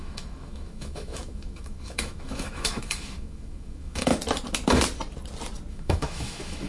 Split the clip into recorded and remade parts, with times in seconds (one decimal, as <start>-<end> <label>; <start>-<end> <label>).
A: 0.0-4.1 remade; 4.1-5.7 recorded; 5.7-6.7 remade